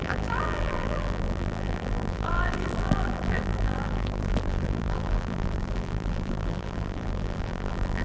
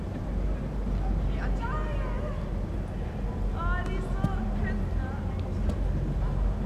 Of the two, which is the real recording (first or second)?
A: second